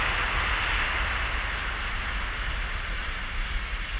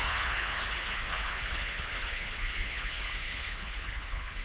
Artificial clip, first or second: second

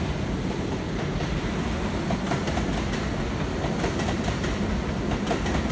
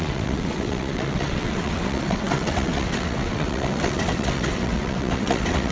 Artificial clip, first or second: second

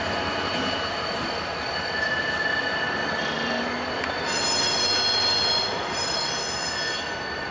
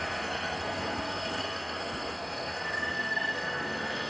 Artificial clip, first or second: second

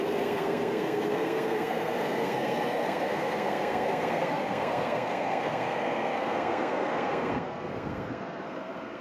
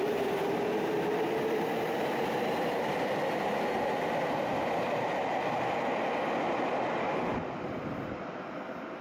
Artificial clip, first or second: first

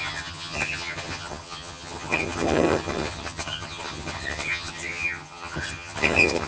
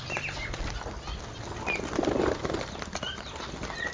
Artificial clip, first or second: first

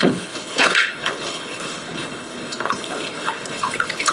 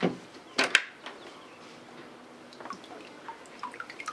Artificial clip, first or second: first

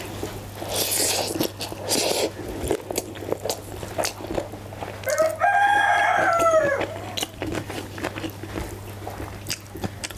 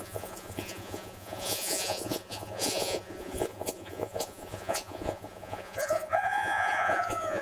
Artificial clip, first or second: second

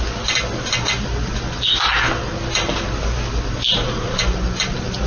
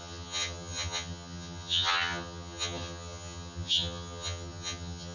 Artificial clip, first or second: second